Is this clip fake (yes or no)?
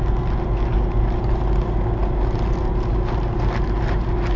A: no